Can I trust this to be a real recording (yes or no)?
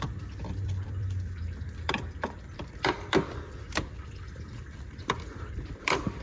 no